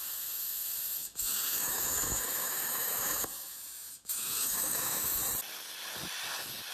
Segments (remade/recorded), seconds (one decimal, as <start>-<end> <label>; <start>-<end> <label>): 0.0-5.2 remade; 5.2-6.7 recorded